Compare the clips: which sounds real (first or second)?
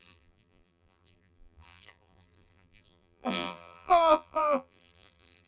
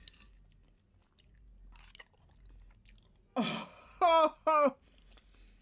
second